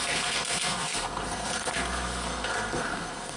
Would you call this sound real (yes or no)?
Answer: no